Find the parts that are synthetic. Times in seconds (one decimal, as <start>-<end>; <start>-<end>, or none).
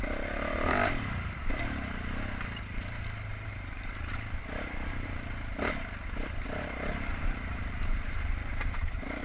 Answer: 3.3-3.9; 7.1-9.2